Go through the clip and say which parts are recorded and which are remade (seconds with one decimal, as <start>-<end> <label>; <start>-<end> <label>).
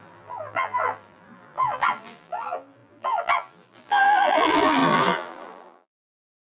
0.0-6.6 remade